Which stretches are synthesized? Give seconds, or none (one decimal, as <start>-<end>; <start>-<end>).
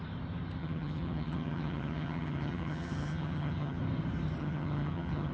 0.6-3.8; 4.4-5.3